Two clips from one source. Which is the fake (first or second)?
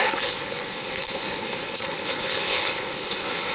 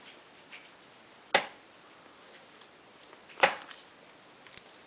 first